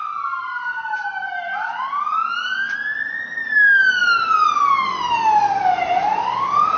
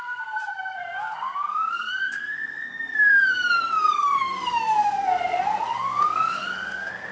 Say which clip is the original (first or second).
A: first